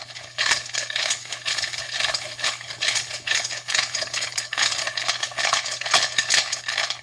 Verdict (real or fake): fake